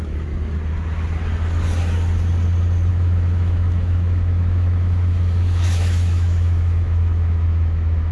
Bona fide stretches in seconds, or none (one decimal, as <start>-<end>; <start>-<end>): 0.0-2.9